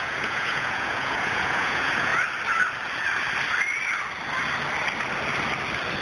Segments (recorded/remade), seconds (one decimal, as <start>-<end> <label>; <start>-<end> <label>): 0.0-2.1 remade; 2.1-6.0 recorded